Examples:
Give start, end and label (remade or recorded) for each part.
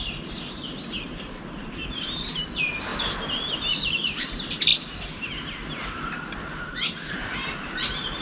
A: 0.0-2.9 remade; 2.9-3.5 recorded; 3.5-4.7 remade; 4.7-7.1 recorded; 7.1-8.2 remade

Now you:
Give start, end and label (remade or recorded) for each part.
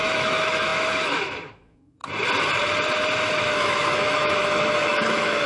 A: 0.0-2.0 remade; 2.0-3.4 recorded; 3.4-5.5 remade